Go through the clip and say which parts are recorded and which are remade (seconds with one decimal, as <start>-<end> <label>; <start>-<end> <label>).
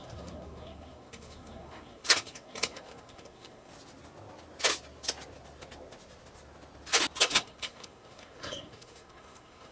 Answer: 0.0-3.7 remade; 3.7-7.2 recorded; 7.2-9.7 remade